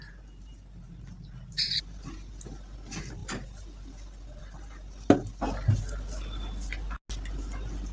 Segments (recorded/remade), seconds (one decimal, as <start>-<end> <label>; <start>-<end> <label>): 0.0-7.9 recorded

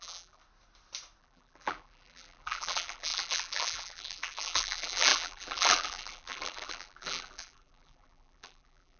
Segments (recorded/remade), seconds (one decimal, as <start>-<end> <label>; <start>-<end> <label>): 0.0-0.4 remade; 0.4-1.2 recorded; 1.2-9.0 remade

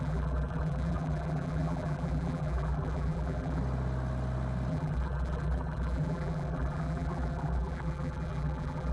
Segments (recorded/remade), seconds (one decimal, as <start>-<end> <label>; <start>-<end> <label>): 0.0-3.6 remade; 3.6-4.7 recorded; 4.7-8.9 remade